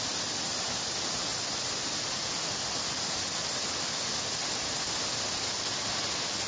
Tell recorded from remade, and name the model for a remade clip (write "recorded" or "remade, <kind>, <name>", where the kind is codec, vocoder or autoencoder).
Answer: recorded